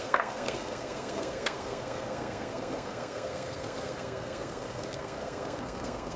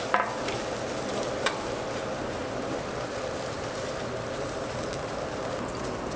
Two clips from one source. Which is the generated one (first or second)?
first